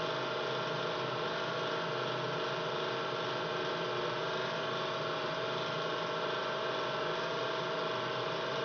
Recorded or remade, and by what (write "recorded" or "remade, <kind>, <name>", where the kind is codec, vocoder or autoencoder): recorded